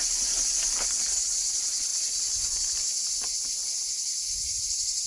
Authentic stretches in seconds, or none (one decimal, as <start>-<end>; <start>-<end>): 0.0-5.1